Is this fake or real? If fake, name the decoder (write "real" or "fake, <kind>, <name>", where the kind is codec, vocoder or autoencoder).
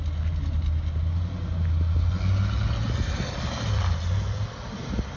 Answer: real